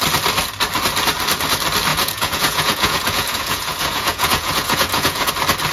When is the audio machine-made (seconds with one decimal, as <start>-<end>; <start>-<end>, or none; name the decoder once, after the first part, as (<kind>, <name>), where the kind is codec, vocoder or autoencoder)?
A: 1.9-5.3 (vocoder, Vocos)